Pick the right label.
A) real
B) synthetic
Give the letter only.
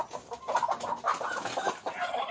A